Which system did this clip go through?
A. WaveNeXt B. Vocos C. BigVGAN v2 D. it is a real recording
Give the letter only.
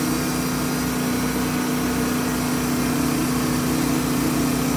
D